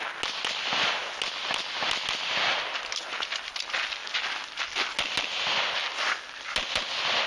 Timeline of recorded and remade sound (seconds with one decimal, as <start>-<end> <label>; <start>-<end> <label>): 0.0-7.3 recorded